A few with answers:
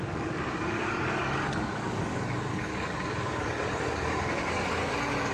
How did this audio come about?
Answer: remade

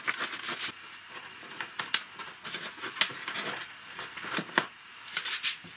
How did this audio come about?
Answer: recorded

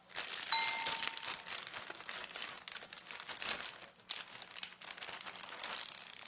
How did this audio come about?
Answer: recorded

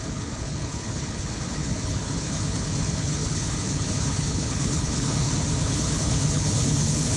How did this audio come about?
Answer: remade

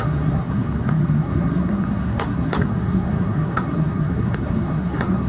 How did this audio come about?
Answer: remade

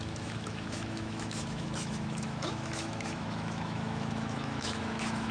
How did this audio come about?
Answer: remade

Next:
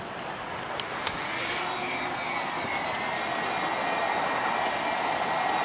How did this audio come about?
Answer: recorded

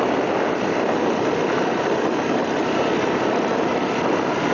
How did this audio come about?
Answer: recorded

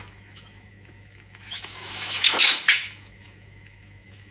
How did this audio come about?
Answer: remade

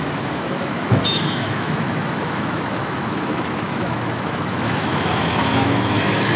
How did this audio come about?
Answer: remade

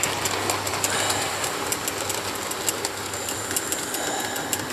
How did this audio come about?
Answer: recorded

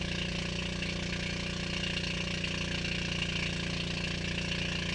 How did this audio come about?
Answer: recorded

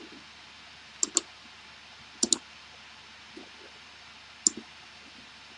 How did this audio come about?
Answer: recorded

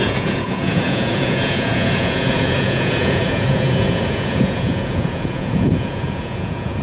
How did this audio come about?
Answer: remade